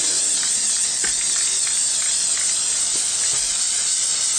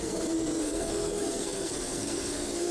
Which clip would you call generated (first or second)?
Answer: second